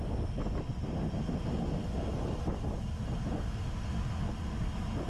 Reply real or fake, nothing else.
real